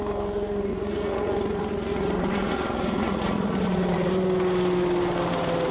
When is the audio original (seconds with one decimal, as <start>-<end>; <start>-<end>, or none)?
0.0-0.7; 4.1-5.7

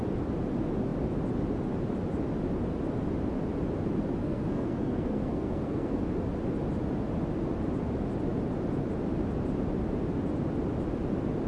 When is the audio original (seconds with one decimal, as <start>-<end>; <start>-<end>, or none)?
0.0-4.2; 6.0-11.5

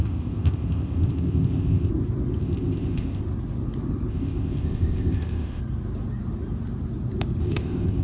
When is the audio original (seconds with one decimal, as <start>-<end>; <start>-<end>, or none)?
1.9-2.4; 3.2-4.1; 5.6-7.4

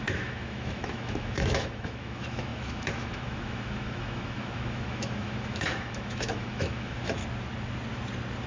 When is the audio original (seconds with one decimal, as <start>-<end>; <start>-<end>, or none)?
7.2-8.5

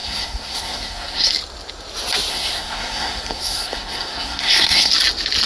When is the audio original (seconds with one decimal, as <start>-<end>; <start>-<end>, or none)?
1.3-2.3; 4.9-5.5

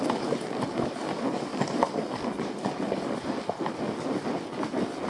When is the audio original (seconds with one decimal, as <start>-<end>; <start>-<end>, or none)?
0.0-5.1

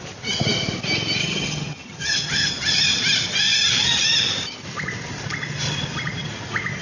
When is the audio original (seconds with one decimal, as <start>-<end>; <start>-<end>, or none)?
0.0-1.2; 2.5-6.8

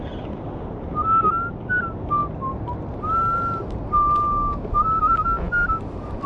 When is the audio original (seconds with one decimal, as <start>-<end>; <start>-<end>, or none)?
0.0-6.3